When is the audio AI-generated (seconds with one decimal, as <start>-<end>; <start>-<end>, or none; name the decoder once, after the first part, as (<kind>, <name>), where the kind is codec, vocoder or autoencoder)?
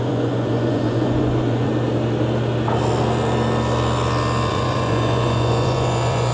0.0-1.7 (vocoder, Vocos); 4.5-6.3